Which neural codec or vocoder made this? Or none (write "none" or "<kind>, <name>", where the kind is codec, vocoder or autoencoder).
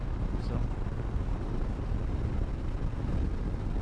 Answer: none